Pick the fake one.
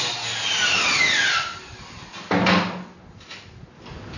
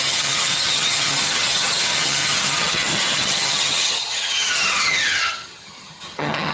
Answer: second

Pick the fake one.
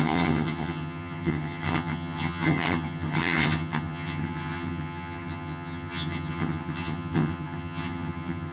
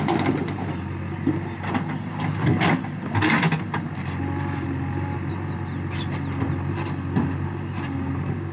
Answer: first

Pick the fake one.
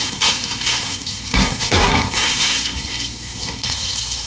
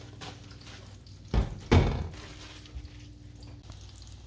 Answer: first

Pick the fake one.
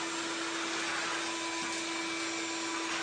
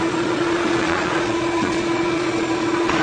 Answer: second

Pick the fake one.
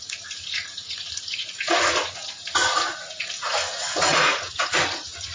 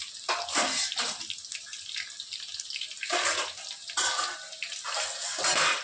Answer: first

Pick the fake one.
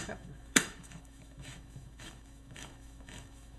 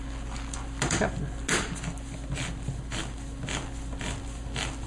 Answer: first